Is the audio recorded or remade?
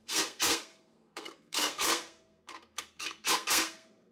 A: remade